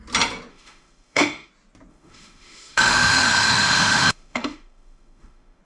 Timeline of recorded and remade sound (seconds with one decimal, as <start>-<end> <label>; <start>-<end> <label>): 0.0-0.5 recorded; 0.5-1.5 remade; 1.5-1.9 recorded; 1.9-5.6 remade